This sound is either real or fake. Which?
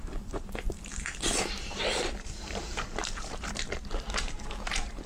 fake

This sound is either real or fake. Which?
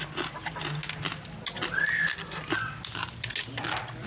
real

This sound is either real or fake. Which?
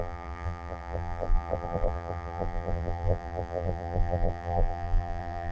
fake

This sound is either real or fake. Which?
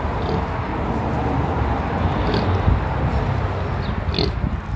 real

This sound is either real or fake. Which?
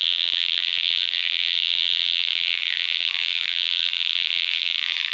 fake